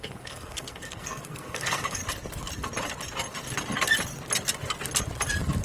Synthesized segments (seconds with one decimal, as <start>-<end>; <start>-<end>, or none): 0.0-2.0